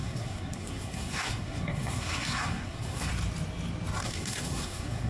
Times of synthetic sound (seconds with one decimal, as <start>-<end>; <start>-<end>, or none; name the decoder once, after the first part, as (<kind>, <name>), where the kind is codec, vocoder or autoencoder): 0.0-3.1 (codec, SNAC); 4.0-5.1